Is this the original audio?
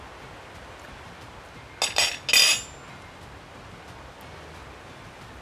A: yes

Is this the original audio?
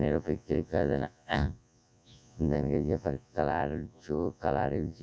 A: no